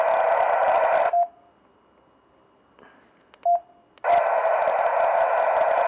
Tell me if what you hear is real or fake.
real